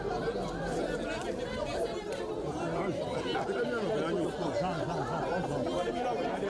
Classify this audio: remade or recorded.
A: recorded